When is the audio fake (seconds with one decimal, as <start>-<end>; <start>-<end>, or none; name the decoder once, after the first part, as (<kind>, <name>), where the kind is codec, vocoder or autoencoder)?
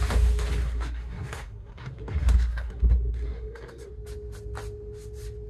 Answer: 0.6-3.9 (codec, SNAC)